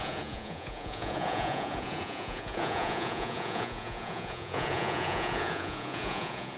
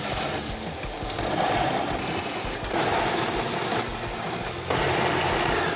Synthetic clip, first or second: first